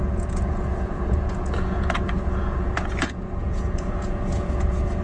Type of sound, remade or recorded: remade